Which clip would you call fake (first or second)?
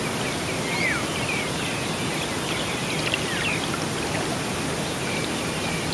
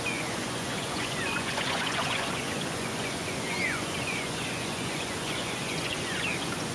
second